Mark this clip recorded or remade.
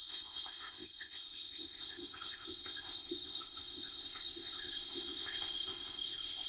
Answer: remade